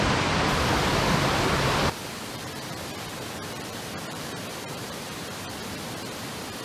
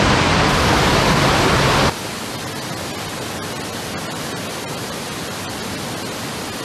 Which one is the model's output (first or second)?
first